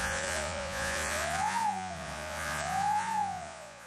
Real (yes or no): no